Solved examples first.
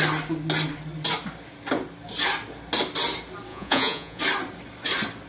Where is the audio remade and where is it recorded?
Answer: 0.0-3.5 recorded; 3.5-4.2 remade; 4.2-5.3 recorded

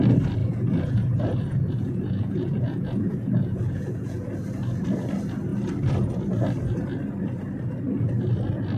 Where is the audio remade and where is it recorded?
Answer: 0.0-0.4 recorded; 0.4-4.3 remade; 4.3-8.8 recorded

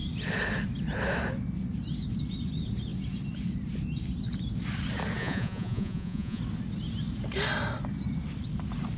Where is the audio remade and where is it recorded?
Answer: 0.0-5.2 recorded; 5.2-6.4 remade; 6.4-9.0 recorded

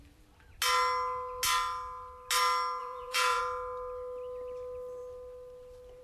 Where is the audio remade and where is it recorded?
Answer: 0.0-2.8 recorded; 2.8-3.4 remade; 3.4-6.0 recorded

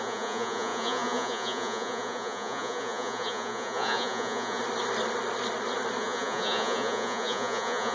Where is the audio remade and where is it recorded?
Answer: 0.0-4.6 remade; 4.6-6.0 recorded; 6.0-7.9 remade